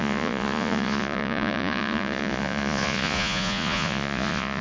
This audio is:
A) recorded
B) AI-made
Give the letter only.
B